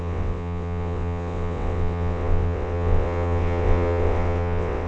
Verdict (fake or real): fake